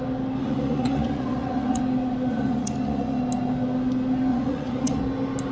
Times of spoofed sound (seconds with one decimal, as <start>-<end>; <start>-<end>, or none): 0.4-1.8; 2.3-3.2; 4.3-5.0